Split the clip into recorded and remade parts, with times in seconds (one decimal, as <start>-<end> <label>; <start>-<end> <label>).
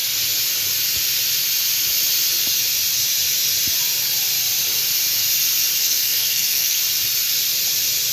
0.0-5.8 recorded; 5.8-6.8 remade; 6.8-8.1 recorded